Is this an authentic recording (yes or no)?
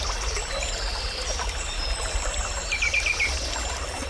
yes